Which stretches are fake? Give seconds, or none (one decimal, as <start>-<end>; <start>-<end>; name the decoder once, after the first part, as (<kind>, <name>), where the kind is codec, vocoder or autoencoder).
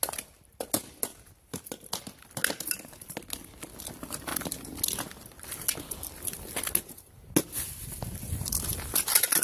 none